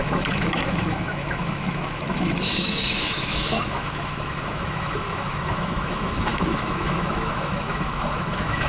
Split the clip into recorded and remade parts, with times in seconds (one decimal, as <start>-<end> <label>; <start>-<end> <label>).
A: 0.0-8.7 remade